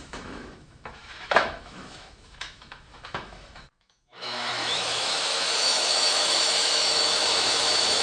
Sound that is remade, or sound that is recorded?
remade